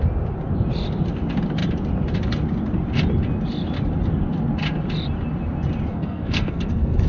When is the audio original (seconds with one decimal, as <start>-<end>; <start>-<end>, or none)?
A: 0.0-5.9